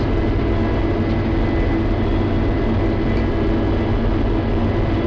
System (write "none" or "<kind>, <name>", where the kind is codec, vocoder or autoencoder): none